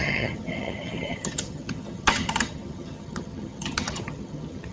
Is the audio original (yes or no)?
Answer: no